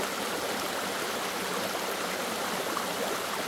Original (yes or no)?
yes